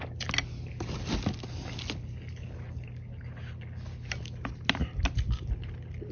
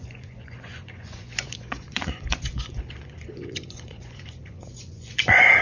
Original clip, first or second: first